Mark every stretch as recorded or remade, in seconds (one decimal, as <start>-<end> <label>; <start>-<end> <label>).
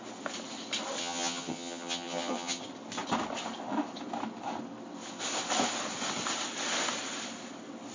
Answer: 0.0-1.0 recorded; 1.0-2.6 remade; 2.6-7.9 recorded